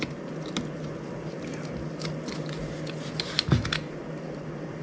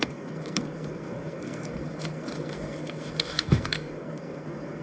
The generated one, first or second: second